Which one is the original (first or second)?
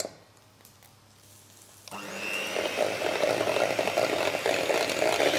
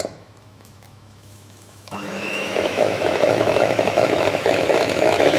first